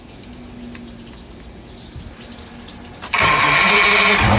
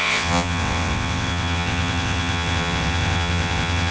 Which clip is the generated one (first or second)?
second